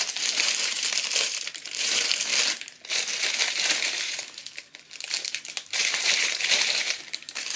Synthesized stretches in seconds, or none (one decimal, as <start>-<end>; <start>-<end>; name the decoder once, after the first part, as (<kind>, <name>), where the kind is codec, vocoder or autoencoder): 0.0-2.3 (vocoder, BigVGAN v2); 2.9-4.2; 5.0-7.6